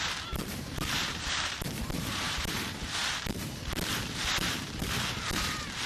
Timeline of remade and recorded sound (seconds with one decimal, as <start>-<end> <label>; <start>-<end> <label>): 0.0-5.9 remade